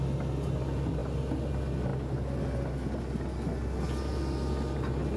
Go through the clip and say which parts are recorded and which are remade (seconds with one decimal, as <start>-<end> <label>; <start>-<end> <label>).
0.0-5.2 recorded